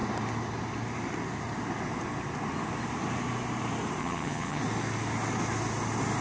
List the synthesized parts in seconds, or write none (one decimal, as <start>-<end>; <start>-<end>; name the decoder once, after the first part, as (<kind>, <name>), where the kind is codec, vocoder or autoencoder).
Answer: 4.0-4.6 (vocoder, HiFi-GAN)